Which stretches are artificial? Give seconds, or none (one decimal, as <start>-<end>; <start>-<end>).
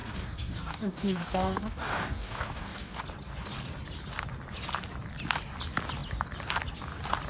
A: 0.0-3.0